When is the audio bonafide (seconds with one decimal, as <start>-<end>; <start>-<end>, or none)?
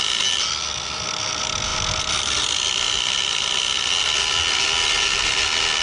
0.0-5.8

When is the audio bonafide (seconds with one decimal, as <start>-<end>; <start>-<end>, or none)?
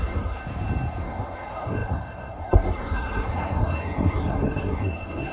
0.4-1.0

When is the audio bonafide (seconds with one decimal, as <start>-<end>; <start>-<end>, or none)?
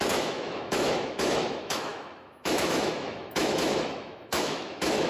none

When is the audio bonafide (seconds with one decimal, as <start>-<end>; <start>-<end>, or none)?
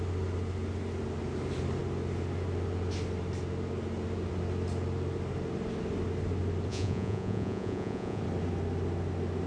0.0-6.7; 8.2-9.5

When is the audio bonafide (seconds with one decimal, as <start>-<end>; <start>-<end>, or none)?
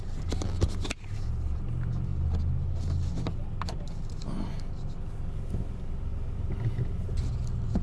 0.0-7.8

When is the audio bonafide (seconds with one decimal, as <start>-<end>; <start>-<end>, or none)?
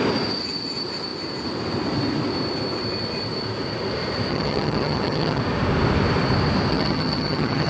0.0-4.3; 5.4-6.7